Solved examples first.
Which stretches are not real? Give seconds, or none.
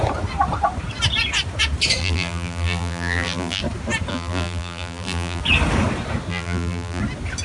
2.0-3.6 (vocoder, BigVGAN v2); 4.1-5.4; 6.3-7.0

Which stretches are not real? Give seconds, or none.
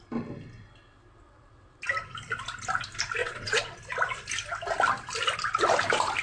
3.2-3.8 (vocoder, WaveNeXt)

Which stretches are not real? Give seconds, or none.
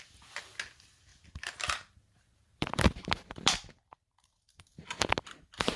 1.1-4.6 (vocoder, BigVGAN v2)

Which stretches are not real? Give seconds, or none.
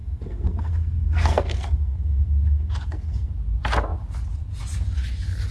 0.0-3.3 (codec, SNAC)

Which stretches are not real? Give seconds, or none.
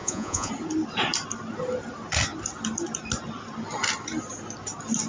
0.0-0.5 (vocoder, Vocos)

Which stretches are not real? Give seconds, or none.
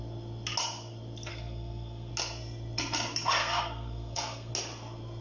1.3-2.1 (codec, SNAC); 3.4-4.5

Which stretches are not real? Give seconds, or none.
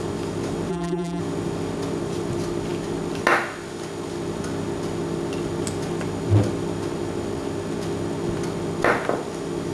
0.7-1.2 (vocoder, BigVGAN v2)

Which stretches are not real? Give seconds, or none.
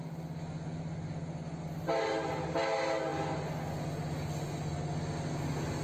none